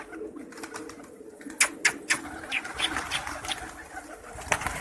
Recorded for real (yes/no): yes